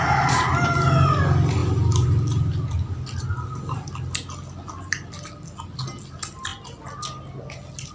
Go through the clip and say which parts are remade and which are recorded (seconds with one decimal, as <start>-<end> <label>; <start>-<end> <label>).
0.0-1.6 recorded; 1.6-3.2 remade; 3.2-7.9 recorded

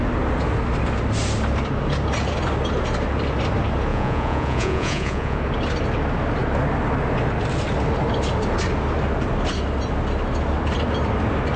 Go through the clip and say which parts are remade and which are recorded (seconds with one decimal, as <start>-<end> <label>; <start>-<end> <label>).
0.0-3.9 recorded; 3.9-5.4 remade; 5.4-11.6 recorded

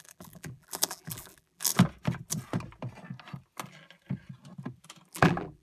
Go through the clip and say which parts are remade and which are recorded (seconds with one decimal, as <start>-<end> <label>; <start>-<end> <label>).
0.0-1.7 remade; 1.7-5.1 recorded; 5.1-5.6 remade

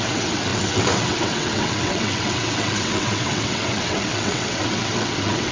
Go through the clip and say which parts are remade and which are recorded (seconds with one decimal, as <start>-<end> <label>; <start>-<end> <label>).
0.0-5.5 remade